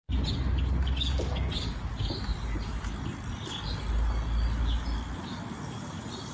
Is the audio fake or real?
real